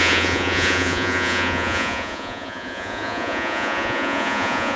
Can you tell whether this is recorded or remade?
remade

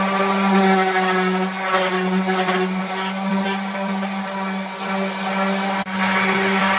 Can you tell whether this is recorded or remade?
recorded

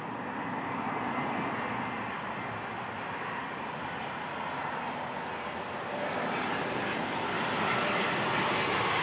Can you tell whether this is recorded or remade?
recorded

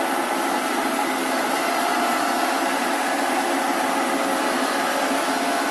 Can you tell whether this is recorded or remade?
recorded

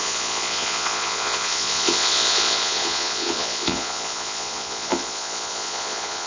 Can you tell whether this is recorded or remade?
remade